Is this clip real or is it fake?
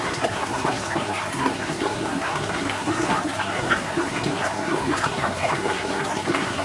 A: fake